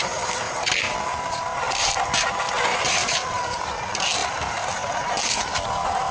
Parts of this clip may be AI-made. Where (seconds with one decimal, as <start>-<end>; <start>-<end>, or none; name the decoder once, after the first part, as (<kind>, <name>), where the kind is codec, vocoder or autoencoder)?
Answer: 0.0-3.7 (vocoder, BigVGAN v2); 4.2-6.1

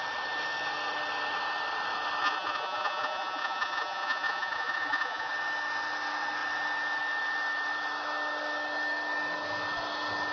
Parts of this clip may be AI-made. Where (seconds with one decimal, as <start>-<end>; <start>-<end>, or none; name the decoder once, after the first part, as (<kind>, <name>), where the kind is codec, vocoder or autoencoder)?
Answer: 2.2-5.3 (vocoder, Vocos)